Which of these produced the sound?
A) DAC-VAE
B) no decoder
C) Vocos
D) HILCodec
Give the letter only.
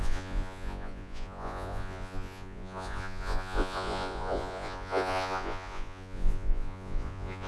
C